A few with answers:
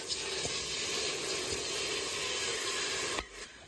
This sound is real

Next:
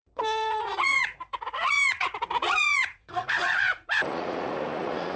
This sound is fake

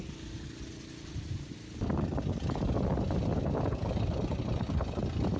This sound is real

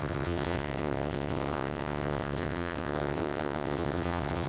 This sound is fake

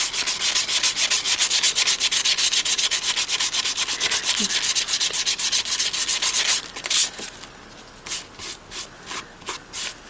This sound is real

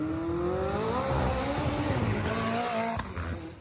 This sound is real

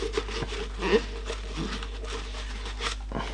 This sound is real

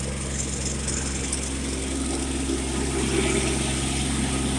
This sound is real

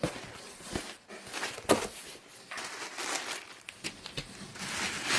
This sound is real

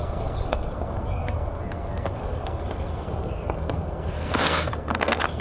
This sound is fake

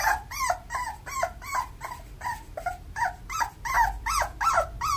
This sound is fake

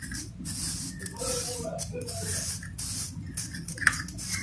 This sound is real